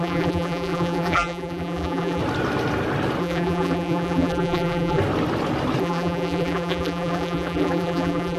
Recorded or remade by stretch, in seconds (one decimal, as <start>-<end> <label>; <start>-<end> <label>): 0.0-2.2 remade; 2.2-3.2 recorded; 3.2-5.0 remade; 5.0-5.8 recorded; 5.8-8.4 remade